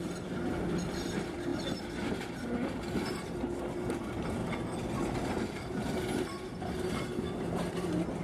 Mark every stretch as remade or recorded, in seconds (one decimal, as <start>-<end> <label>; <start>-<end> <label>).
0.0-1.5 remade; 1.5-3.4 recorded; 3.4-4.4 remade; 4.4-5.3 recorded; 5.3-8.2 remade